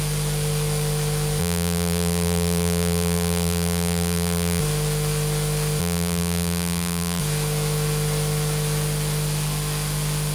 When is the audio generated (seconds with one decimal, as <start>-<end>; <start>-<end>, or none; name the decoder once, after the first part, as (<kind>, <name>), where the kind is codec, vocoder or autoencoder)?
1.4-4.6 (vocoder, BigVGAN v2); 5.8-7.2